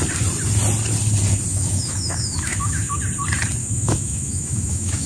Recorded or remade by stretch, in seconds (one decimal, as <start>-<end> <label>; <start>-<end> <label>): 0.0-1.5 recorded; 1.5-3.0 remade; 3.0-3.6 recorded; 3.6-5.1 remade